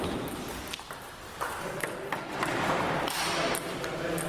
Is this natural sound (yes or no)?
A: yes